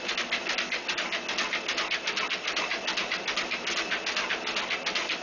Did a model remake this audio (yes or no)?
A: no